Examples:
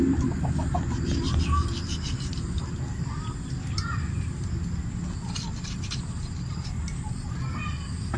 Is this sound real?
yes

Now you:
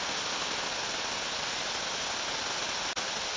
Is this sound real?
yes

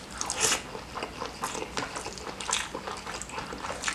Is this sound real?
yes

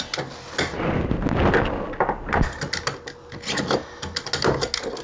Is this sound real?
yes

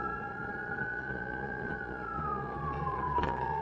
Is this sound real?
no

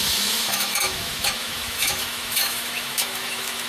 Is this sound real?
no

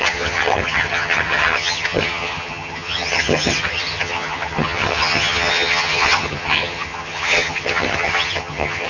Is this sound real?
no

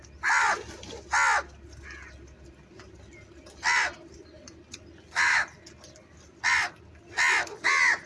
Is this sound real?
yes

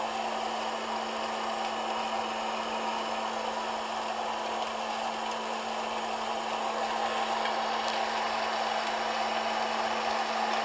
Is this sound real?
yes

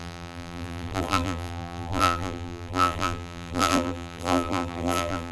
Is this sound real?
no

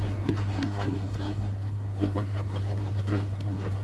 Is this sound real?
no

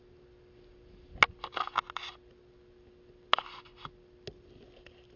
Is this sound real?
yes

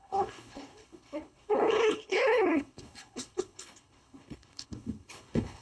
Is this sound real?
no